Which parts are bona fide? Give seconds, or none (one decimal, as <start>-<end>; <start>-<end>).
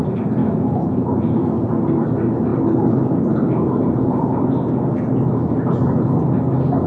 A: 0.0-0.4; 1.5-6.9